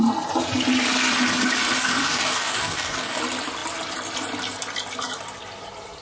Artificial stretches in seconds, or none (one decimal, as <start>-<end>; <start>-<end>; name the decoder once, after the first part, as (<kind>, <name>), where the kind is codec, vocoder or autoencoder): 1.8-3.2 (codec, DAC)